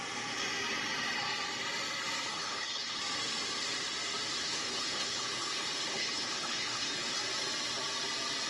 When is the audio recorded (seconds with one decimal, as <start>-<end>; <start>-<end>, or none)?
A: 0.0-2.3; 3.0-4.4; 7.2-8.5